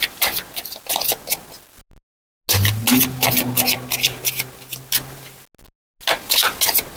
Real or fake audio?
real